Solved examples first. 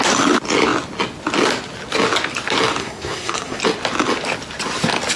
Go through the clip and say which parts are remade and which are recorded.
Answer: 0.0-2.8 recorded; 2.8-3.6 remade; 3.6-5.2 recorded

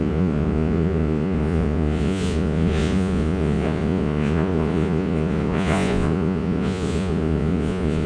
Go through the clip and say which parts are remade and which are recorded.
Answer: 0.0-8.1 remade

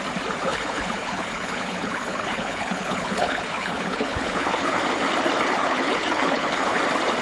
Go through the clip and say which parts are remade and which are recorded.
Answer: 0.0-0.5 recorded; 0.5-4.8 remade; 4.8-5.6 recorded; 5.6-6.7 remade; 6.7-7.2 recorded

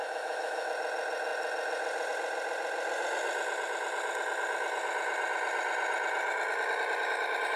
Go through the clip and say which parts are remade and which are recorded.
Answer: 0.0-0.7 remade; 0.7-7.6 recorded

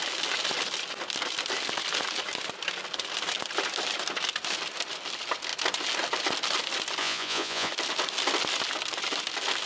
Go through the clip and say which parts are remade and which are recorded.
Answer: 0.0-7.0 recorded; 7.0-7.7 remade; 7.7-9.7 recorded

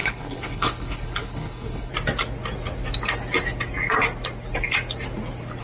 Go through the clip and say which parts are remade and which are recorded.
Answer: 0.0-1.9 remade; 1.9-5.6 recorded

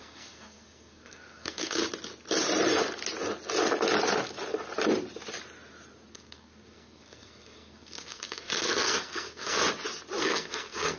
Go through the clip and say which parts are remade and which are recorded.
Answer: 0.0-1.8 remade; 1.8-6.1 recorded; 6.1-9.6 remade; 9.6-10.2 recorded; 10.2-11.0 remade